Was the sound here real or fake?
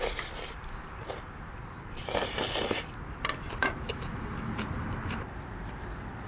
fake